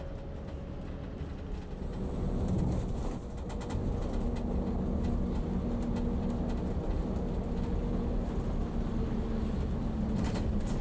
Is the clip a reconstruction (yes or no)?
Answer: no